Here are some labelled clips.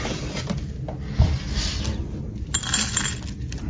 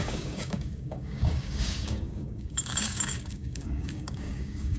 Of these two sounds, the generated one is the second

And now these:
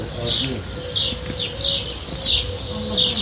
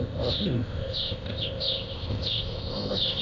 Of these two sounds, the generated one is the second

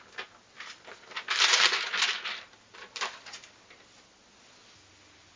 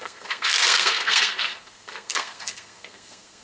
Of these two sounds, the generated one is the second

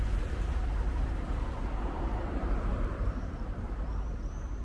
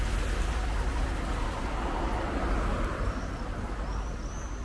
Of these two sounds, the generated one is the first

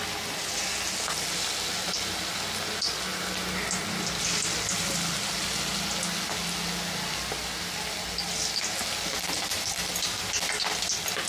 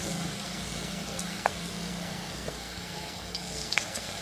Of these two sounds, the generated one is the second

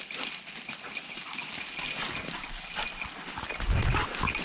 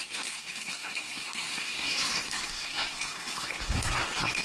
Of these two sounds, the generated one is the second